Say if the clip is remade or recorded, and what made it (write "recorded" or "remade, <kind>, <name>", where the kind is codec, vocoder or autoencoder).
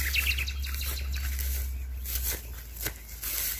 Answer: recorded